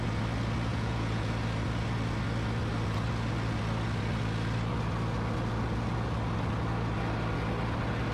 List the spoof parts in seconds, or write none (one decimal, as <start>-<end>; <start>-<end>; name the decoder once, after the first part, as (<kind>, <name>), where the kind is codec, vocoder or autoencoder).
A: 0.7-1.3 (vocoder, Vocos)